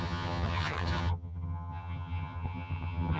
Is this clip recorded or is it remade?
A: remade